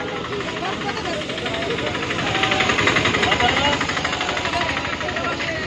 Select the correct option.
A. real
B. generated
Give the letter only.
B